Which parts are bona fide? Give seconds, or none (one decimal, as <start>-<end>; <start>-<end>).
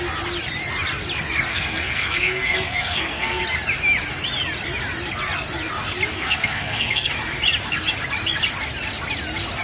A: 0.0-1.5; 3.4-6.1; 7.1-9.6